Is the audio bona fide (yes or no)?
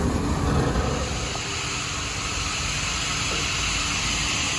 yes